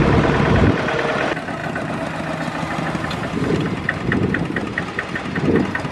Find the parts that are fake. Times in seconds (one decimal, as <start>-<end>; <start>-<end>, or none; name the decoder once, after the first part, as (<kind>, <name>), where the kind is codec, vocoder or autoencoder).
none